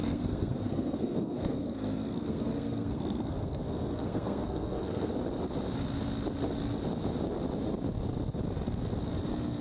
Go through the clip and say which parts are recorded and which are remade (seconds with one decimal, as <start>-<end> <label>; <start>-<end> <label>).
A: 0.0-5.1 remade; 5.1-9.6 recorded